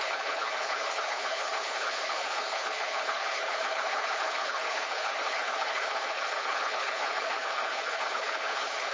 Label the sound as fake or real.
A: fake